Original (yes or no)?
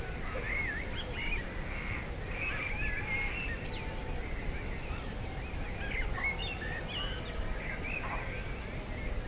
yes